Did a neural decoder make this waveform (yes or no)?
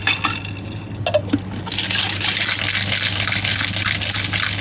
no